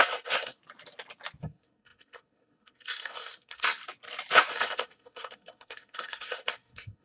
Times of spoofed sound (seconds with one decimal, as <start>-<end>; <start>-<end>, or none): 0.0-0.6; 1.4-3.8; 4.5-7.0